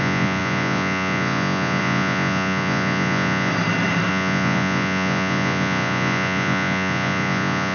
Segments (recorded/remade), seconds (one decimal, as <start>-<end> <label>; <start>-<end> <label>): 0.0-3.5 remade; 3.5-4.1 recorded; 4.1-7.7 remade